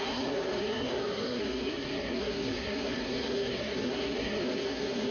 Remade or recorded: remade